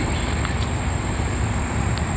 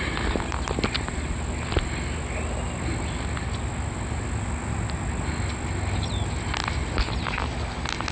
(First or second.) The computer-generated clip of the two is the first